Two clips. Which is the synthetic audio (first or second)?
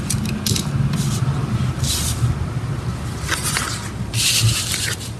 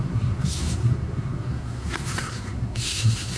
second